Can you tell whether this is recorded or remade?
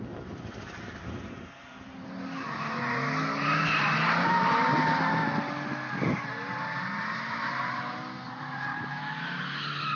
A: recorded